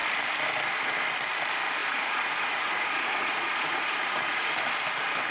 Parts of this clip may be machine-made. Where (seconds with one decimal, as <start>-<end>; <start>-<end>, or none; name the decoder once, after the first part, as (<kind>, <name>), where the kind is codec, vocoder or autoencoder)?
1.8-4.5 (vocoder, Vocos)